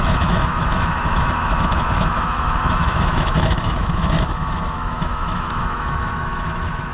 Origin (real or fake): fake